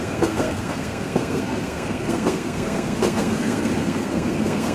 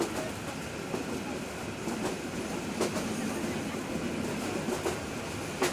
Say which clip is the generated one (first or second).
first